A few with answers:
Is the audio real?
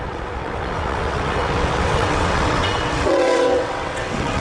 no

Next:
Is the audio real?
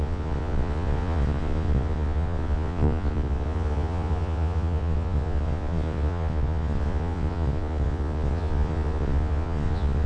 no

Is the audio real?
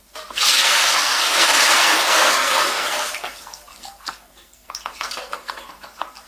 no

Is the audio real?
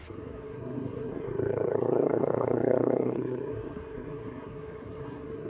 no